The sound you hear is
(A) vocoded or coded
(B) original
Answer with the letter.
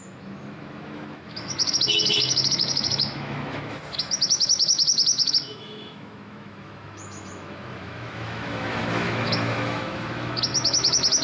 A